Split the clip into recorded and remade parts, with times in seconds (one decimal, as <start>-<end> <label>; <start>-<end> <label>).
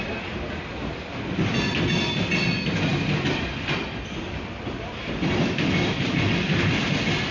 0.0-2.9 recorded; 2.9-6.7 remade; 6.7-7.3 recorded